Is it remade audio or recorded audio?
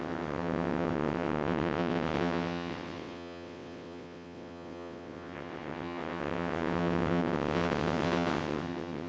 remade